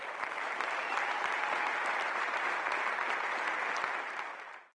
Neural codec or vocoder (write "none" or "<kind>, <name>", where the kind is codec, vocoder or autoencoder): vocoder, BigVGAN v2